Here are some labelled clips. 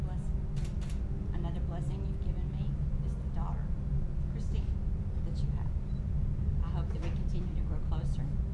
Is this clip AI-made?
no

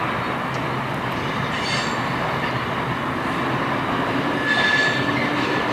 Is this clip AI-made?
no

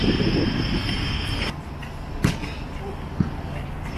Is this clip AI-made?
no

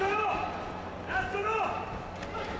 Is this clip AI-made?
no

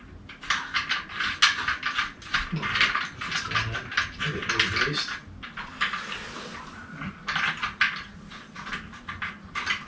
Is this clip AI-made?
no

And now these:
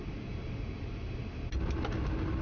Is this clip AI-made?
no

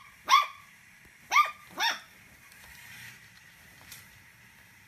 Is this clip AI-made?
yes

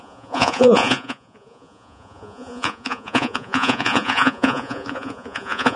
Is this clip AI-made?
yes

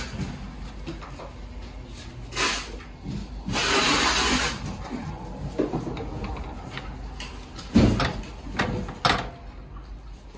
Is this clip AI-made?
no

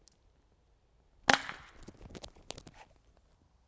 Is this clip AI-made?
no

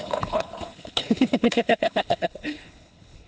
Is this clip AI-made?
yes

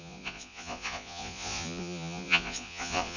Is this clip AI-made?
yes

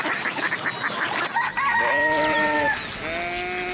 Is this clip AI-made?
no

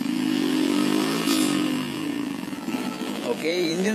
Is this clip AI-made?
yes